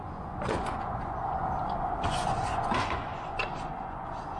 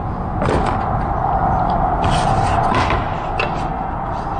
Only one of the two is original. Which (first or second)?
second